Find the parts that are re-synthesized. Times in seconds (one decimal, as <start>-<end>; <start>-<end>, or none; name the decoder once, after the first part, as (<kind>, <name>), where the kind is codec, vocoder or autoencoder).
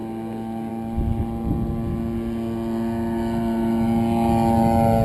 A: none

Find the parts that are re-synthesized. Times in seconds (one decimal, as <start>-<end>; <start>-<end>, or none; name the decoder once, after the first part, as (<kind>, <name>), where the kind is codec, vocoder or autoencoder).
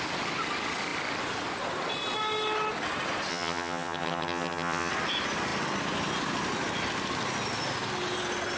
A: 3.3-4.9 (vocoder, HiFi-GAN)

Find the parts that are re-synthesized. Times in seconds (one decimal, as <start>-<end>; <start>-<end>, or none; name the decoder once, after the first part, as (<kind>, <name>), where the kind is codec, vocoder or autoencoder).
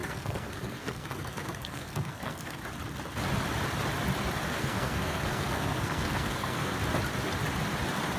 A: 0.0-2.6 (codec, SNAC); 4.5-6.8